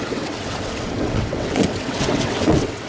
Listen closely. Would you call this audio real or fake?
fake